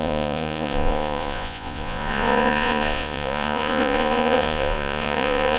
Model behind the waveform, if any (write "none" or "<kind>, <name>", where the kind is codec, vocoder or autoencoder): vocoder, Vocos